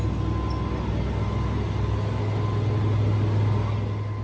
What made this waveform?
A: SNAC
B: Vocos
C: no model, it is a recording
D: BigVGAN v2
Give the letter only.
C